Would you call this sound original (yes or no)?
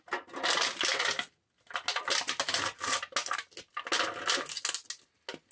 yes